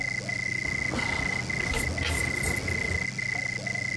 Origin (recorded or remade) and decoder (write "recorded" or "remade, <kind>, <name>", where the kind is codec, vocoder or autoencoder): recorded